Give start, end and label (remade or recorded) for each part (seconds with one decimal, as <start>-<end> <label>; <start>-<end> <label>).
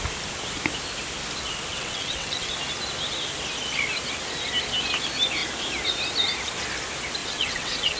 0.0-1.7 recorded; 1.7-2.5 remade; 2.5-7.2 recorded; 7.2-8.0 remade